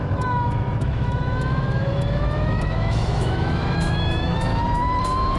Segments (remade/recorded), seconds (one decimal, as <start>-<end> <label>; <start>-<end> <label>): 0.0-4.5 remade; 4.5-5.4 recorded